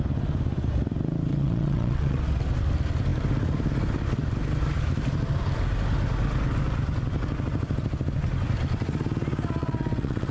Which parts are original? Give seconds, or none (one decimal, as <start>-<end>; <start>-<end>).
0.0-1.3; 2.2-9.6